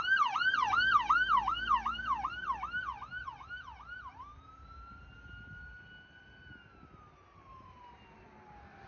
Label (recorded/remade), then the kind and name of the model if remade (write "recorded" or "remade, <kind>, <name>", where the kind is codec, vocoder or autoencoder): recorded